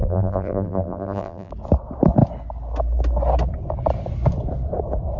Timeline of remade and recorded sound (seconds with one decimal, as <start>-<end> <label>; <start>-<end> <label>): 0.0-1.5 remade; 1.5-5.2 recorded